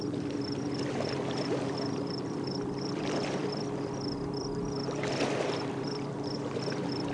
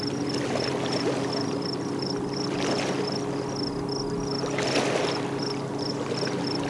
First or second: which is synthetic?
first